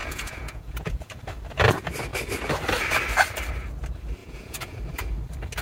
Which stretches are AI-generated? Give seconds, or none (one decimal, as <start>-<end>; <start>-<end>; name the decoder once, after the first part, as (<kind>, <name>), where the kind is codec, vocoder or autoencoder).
0.0-1.1 (vocoder, Vocos); 4.2-4.8